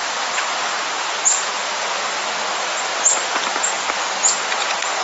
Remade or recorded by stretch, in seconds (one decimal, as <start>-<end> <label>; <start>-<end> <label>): 0.0-5.0 recorded